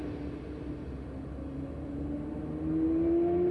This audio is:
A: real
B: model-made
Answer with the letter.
A